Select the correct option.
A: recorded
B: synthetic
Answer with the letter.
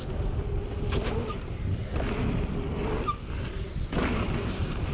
A